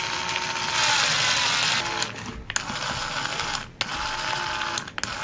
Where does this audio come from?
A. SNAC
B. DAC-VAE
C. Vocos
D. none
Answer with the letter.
D